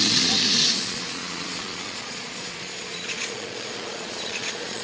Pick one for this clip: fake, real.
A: fake